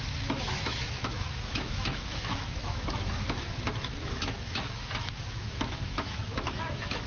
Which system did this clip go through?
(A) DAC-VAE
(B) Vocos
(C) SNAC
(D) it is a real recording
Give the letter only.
A